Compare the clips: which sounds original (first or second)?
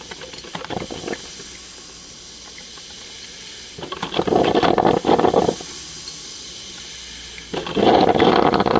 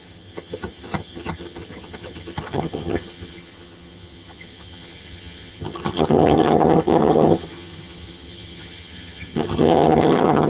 first